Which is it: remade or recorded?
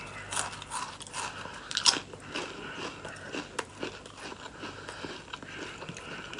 recorded